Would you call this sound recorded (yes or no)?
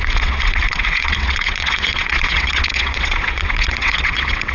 no